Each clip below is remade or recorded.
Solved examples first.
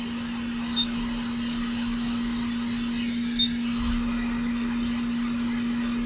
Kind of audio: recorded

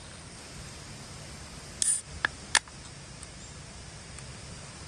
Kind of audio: recorded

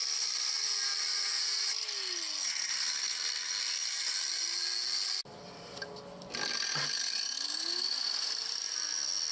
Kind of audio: recorded